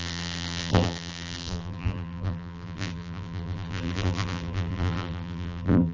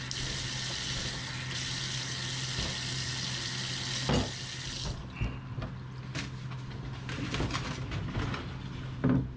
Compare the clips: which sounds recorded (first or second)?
second